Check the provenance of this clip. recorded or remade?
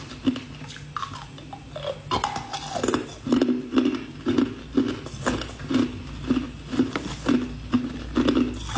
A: recorded